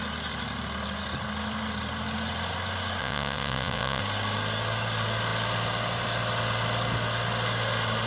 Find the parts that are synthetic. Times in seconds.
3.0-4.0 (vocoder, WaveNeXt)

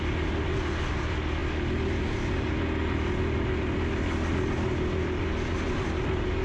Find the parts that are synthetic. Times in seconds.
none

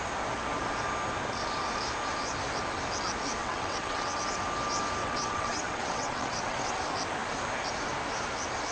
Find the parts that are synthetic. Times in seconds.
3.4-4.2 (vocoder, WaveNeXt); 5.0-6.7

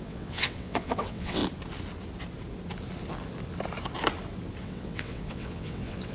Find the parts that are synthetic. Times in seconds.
0.0-1.4 (vocoder, WaveNeXt); 4.6-6.1

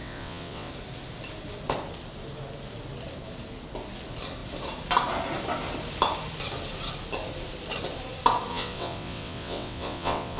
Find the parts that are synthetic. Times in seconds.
0.0-0.7 (vocoder, WaveNeXt); 8.5-10.4

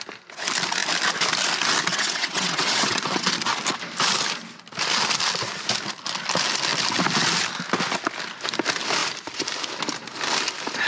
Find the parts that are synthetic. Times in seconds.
1.9-3.3 (vocoder, WaveNeXt)